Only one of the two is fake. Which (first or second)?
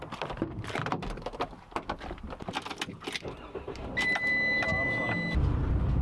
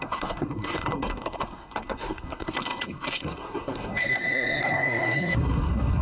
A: second